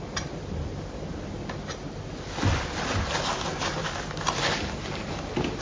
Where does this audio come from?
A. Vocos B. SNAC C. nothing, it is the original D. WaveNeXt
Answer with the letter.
C